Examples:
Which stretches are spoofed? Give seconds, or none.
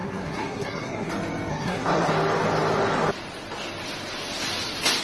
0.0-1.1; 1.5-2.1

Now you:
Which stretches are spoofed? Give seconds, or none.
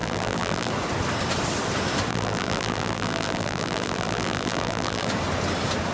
0.0-0.7; 2.1-5.1